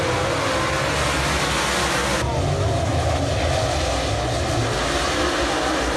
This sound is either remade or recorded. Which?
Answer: recorded